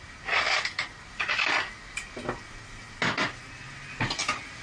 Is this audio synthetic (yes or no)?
no